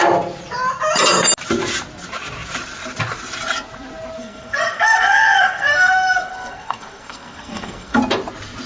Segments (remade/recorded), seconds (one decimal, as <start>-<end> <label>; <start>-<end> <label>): 0.0-4.2 recorded; 4.2-8.0 remade; 8.0-8.7 recorded